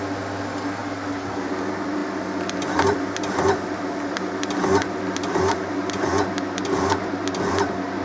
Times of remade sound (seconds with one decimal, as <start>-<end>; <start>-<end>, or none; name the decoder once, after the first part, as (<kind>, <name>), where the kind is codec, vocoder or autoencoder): none